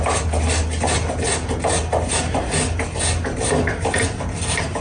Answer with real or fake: real